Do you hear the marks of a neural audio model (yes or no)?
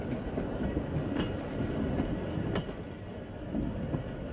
no